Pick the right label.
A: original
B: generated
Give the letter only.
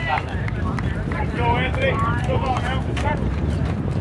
B